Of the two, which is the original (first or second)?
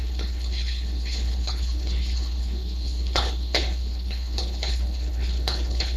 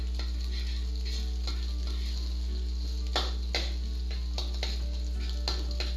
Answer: second